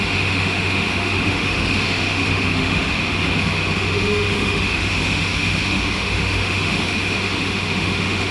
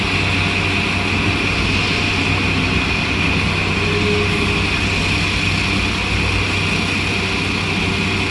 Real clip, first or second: second